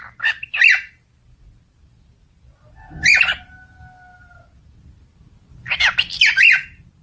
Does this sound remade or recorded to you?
recorded